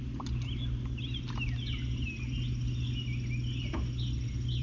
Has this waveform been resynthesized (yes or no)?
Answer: no